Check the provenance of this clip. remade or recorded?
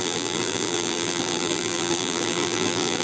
remade